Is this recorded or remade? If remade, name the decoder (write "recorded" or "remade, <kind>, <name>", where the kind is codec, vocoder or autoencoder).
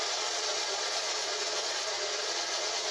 remade, vocoder, Vocos